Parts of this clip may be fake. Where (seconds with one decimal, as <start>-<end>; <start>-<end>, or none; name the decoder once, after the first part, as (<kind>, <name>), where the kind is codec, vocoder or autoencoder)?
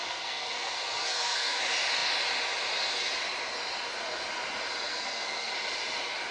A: 0.0-1.6 (codec, SNAC); 4.9-5.5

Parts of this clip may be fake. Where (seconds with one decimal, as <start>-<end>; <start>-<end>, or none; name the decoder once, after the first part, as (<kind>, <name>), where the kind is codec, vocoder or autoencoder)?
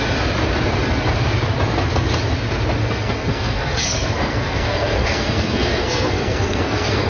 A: 2.8-7.1 (codec, SNAC)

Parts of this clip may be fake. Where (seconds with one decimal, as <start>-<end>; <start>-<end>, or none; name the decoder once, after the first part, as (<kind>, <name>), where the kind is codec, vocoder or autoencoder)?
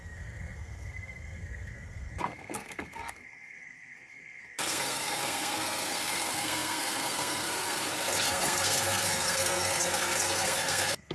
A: 0.0-11.1 (codec, SNAC)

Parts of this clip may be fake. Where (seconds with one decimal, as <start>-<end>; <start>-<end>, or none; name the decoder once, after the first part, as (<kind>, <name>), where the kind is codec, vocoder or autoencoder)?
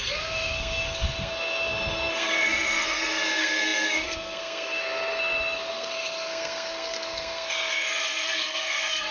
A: 0.0-9.1 (codec, SNAC)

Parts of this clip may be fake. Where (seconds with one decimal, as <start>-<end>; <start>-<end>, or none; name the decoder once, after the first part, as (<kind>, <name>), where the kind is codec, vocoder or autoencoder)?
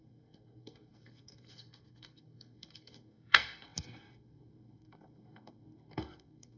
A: 0.0-6.6 (codec, SNAC)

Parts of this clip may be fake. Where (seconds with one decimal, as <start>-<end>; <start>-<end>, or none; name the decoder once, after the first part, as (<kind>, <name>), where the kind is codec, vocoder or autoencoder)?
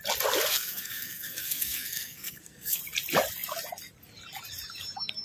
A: 0.5-2.8 (codec, SNAC)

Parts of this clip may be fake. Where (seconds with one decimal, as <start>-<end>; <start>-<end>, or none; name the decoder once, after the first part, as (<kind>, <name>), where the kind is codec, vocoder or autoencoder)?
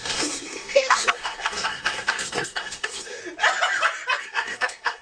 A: 0.0-3.2 (codec, SNAC); 4.2-5.0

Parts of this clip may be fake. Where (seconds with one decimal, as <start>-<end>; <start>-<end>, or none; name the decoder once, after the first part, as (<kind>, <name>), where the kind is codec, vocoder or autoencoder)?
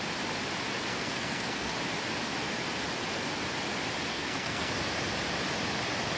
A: 0.9-1.7 (codec, SNAC); 4.1-4.7